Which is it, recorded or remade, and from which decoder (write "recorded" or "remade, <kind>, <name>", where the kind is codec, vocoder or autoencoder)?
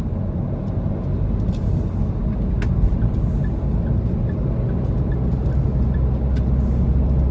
recorded